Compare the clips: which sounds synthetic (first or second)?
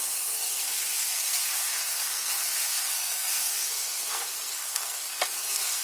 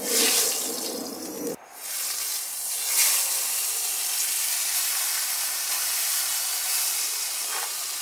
first